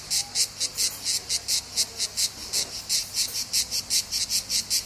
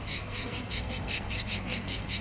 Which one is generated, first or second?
second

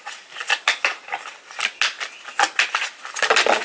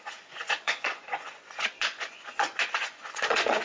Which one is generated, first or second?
second